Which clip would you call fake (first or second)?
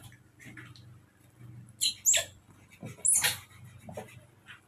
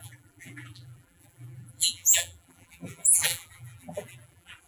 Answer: second